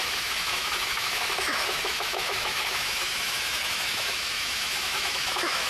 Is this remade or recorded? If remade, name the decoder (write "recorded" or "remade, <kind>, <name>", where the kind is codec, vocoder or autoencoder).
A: remade, autoencoder, DAC-VAE